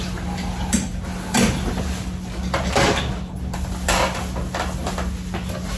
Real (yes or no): yes